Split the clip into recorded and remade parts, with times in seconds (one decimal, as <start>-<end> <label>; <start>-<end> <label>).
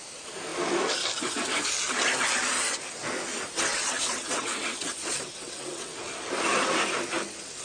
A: 0.0-3.7 recorded; 3.7-5.9 remade; 5.9-7.6 recorded